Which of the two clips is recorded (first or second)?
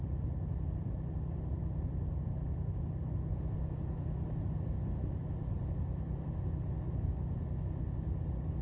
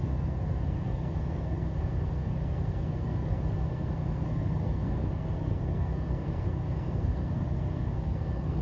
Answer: first